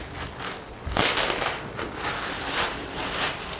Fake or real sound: real